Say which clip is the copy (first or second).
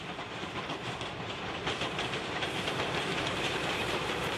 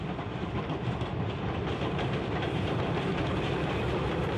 first